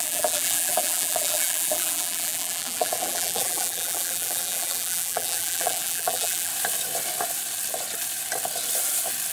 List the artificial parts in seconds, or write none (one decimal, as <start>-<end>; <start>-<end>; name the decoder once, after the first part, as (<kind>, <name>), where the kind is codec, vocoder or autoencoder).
0.0-6.5 (vocoder, BigVGAN v2)